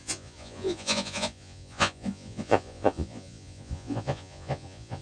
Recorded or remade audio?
remade